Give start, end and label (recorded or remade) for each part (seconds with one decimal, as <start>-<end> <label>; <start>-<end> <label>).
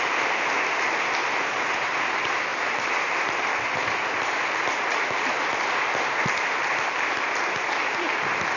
0.0-8.6 recorded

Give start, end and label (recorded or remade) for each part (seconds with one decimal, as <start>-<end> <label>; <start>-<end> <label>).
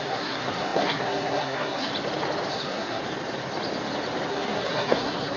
0.0-1.9 remade; 1.9-2.5 recorded; 2.5-3.0 remade; 3.0-4.3 recorded; 4.3-5.4 remade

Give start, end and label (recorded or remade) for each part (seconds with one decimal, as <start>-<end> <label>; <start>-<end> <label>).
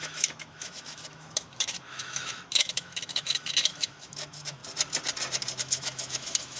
0.0-4.6 remade; 4.6-5.6 recorded; 5.6-6.6 remade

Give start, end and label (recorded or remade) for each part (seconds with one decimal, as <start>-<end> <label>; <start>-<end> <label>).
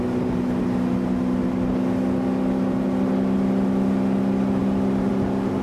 0.0-5.6 recorded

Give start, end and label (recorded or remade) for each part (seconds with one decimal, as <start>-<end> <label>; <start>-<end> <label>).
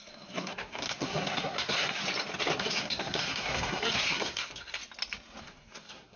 0.0-2.0 remade; 2.0-2.6 recorded; 2.6-4.8 remade; 4.8-5.4 recorded; 5.4-6.2 remade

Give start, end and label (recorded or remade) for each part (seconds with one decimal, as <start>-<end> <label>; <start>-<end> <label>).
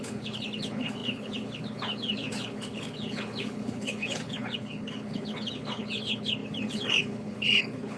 0.0-8.0 remade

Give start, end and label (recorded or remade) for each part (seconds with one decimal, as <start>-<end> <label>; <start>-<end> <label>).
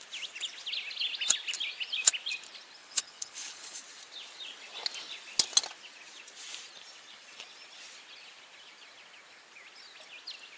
0.0-2.8 recorded; 2.8-3.8 remade; 3.8-10.6 recorded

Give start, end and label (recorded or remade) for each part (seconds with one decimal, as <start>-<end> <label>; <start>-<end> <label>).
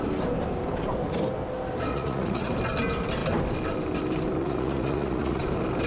0.0-1.9 recorded; 1.9-2.5 remade; 2.5-4.4 recorded; 4.4-5.4 remade; 5.4-5.9 recorded